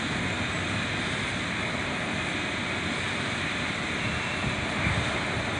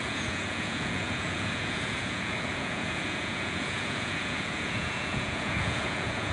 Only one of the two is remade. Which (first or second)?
second